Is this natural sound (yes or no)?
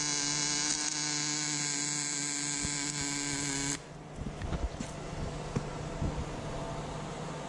yes